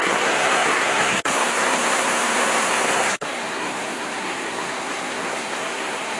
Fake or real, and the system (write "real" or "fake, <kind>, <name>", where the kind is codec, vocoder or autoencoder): fake, codec, SNAC